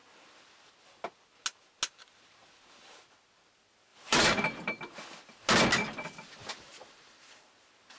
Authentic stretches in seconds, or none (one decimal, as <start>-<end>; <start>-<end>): 0.0-3.9; 4.8-6.4